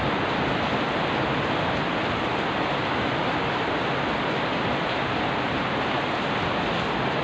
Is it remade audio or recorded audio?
recorded